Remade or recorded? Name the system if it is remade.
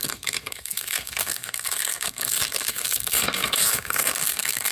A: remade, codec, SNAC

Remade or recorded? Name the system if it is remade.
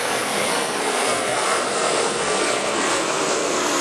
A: remade, codec, SNAC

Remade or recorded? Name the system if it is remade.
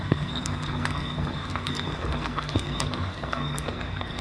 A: remade, codec, SNAC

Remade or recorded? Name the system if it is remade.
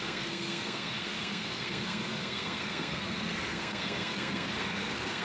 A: remade, codec, SNAC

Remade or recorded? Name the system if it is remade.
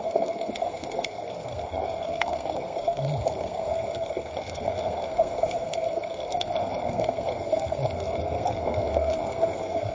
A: remade, codec, SNAC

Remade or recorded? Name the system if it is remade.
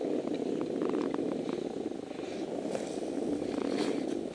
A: recorded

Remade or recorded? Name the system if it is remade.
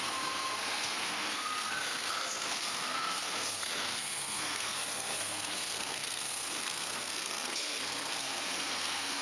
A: remade, codec, SNAC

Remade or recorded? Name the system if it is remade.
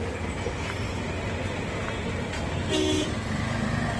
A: recorded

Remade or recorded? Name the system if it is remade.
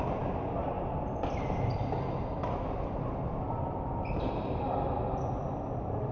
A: recorded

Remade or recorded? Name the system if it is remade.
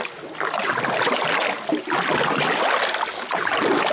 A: recorded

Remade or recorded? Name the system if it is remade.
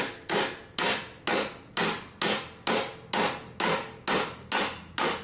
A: recorded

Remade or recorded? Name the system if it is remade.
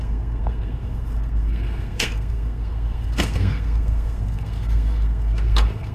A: remade, codec, SNAC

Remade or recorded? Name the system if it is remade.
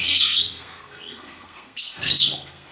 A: remade, codec, SNAC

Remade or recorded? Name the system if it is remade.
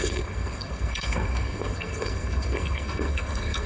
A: remade, codec, SNAC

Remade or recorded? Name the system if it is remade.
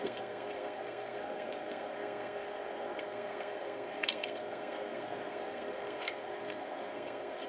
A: remade, codec, SNAC